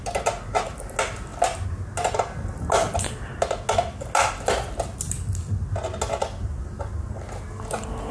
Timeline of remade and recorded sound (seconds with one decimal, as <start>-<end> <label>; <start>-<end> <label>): 0.0-8.1 recorded